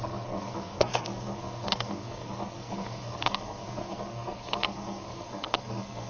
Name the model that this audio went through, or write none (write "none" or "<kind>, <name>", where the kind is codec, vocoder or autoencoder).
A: codec, SNAC